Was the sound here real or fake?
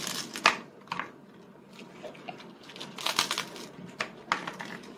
real